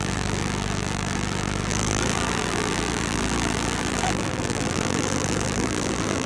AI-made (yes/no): yes